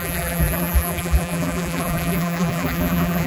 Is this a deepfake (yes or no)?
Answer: yes